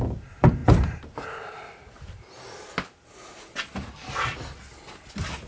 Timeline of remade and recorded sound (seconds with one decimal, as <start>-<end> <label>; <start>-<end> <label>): 0.0-5.5 recorded